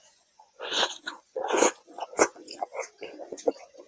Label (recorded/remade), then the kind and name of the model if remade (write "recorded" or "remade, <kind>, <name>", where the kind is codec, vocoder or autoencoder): remade, vocoder, Vocos